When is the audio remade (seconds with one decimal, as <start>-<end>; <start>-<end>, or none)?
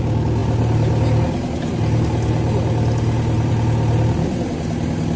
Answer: none